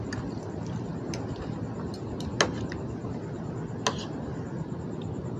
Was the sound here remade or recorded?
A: recorded